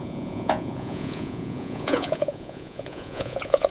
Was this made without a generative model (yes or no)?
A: no